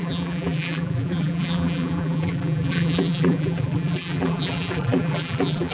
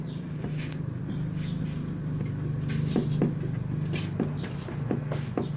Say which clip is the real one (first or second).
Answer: second